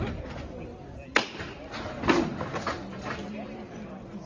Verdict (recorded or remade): recorded